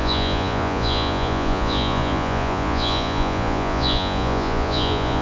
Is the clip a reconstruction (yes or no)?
yes